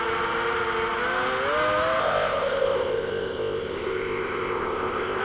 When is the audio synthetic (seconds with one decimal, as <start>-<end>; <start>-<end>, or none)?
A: 2.0-5.2